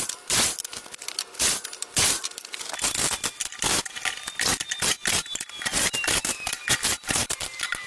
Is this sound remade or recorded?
recorded